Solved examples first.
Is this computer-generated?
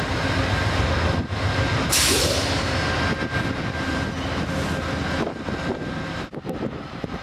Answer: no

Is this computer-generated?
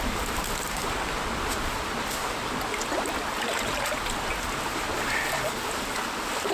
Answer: no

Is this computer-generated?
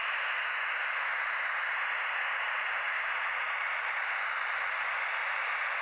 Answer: no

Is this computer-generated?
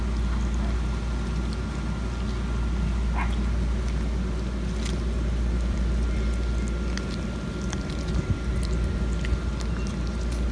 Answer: no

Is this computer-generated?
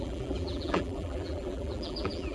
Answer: yes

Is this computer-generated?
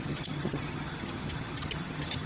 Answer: yes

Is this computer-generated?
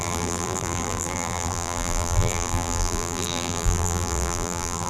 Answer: yes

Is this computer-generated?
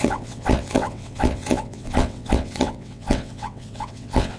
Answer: yes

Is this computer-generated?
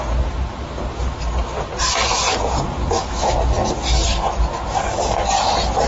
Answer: no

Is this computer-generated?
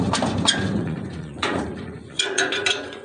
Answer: yes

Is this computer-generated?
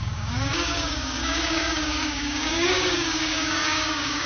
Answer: yes